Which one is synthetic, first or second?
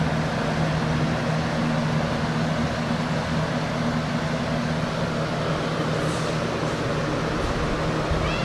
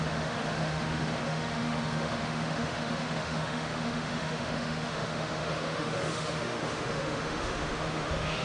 second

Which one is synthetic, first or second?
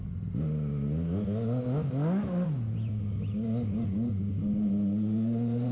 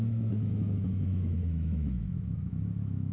second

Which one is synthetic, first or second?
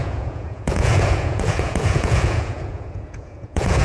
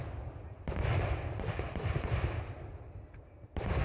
first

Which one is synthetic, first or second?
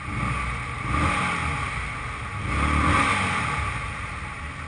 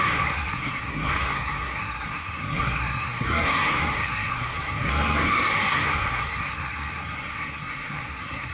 second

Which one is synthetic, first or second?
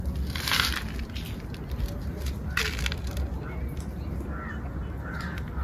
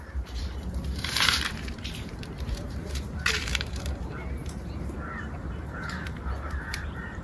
second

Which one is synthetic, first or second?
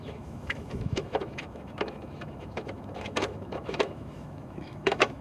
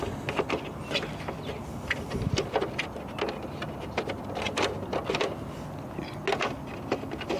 first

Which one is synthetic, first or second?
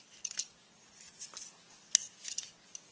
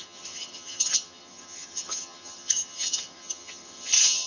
second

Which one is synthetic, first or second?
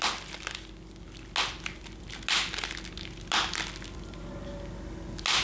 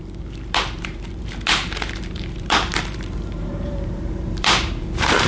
second